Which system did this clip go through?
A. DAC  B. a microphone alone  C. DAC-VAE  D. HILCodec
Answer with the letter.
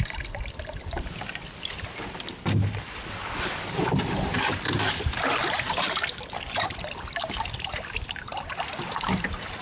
B